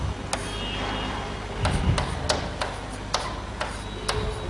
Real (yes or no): yes